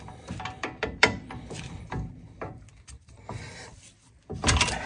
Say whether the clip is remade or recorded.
remade